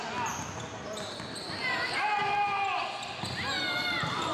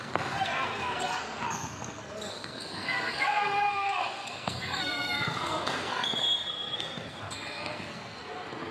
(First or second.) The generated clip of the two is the second